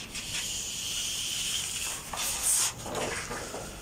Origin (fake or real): real